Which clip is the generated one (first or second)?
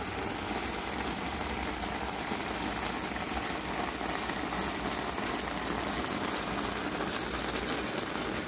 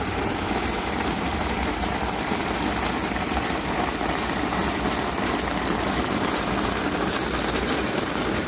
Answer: second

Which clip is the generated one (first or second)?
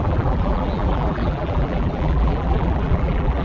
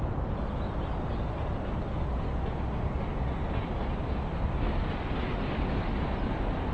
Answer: first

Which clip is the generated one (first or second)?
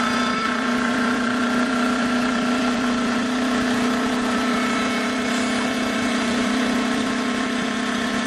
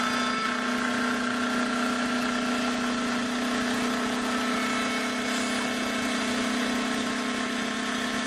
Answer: first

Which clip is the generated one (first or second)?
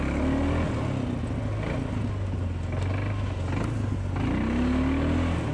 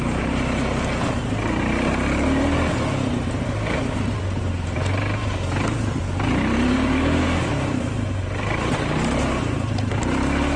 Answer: second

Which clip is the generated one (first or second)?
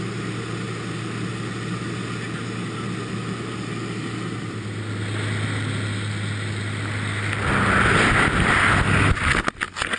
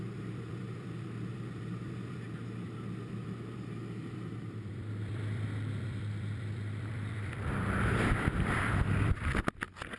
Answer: second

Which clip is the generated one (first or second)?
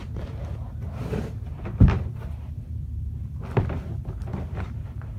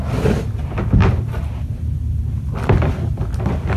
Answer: first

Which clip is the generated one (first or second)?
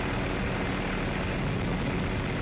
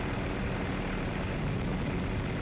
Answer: second